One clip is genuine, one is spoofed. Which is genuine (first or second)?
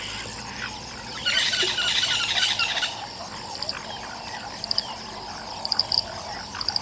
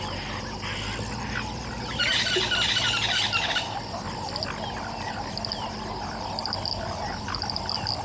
second